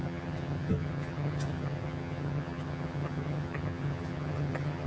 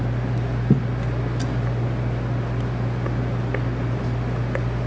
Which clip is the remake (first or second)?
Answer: first